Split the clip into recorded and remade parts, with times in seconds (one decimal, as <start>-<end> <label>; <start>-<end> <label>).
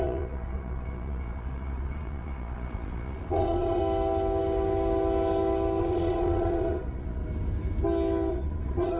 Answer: 0.0-3.8 remade; 3.8-5.8 recorded; 5.8-7.2 remade; 7.2-8.3 recorded; 8.3-9.0 remade